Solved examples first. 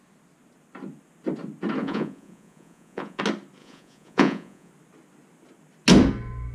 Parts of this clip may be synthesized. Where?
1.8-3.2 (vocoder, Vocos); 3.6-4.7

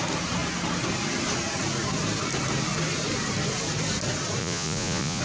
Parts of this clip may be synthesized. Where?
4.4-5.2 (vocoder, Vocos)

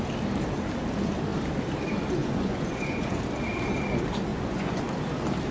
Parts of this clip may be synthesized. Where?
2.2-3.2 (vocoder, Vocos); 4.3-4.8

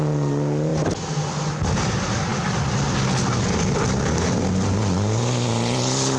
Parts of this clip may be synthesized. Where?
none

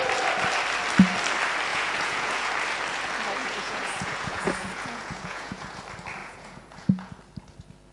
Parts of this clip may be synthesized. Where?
1.7-2.5 (vocoder, Vocos); 3.4-5.8; 6.2-7.1